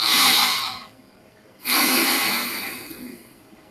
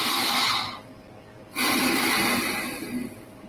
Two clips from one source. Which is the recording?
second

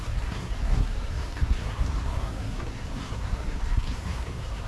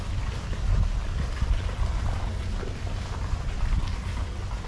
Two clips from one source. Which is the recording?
second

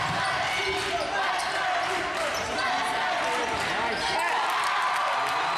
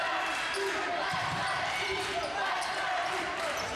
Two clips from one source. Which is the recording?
first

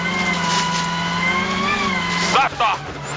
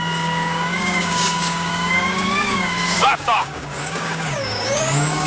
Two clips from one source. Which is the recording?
first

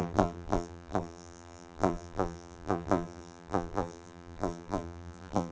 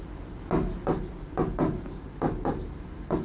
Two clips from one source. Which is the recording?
second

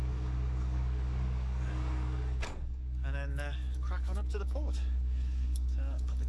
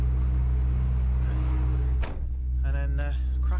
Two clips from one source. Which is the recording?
second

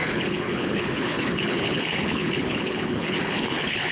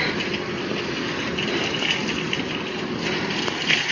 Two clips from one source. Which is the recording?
second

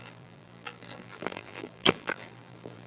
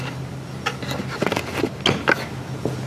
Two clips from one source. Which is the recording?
second